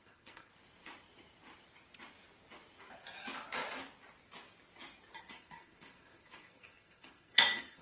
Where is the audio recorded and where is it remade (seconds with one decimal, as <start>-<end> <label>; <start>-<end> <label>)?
0.0-0.5 remade; 0.5-5.2 recorded; 5.2-7.8 remade